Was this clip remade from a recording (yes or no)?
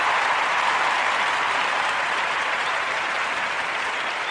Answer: yes